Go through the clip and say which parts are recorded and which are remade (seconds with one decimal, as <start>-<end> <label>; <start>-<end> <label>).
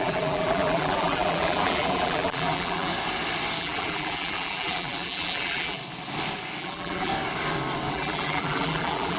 0.0-2.9 remade; 2.9-3.6 recorded; 3.6-5.8 remade; 5.8-6.6 recorded; 6.6-7.1 remade; 7.1-7.9 recorded; 7.9-9.2 remade